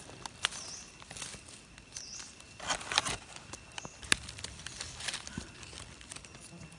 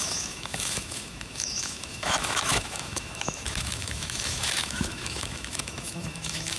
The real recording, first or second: first